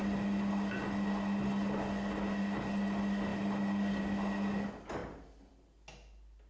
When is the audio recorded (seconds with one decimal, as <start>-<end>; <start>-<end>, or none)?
0.0-6.5

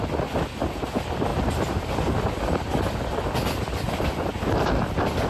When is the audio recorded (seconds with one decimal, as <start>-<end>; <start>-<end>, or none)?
0.0-5.3

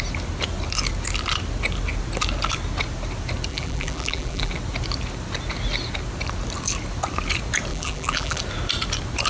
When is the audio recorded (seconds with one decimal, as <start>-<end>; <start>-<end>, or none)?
0.0-3.5; 4.5-7.7; 8.4-9.3

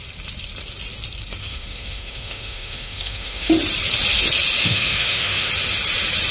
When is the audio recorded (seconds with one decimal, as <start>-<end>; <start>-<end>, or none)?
0.0-1.4; 3.5-4.6; 5.5-6.3